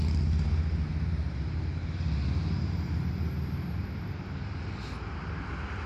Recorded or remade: recorded